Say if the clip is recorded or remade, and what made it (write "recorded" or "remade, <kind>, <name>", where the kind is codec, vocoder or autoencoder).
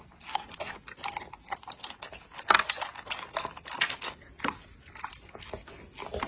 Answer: recorded